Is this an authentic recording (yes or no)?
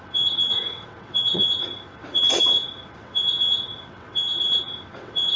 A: no